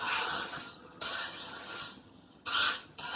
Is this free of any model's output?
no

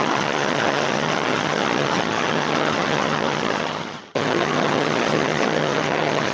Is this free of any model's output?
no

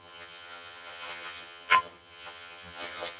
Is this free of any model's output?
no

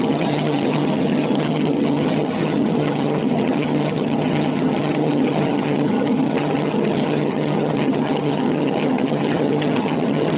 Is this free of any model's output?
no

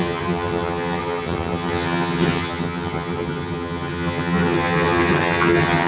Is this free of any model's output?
no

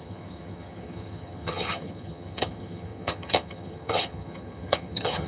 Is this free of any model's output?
no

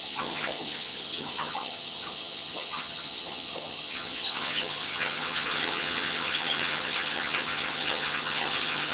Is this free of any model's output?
no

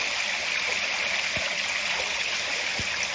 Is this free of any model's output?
yes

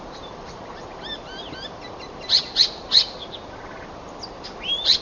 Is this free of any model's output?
yes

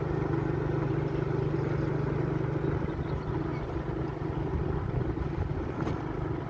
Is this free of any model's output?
yes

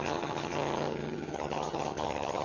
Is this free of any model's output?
no